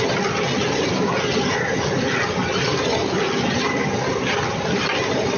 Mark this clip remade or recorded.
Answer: recorded